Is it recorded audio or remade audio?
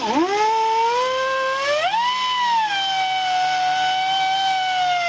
recorded